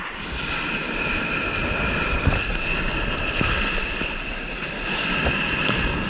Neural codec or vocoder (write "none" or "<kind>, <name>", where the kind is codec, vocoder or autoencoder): none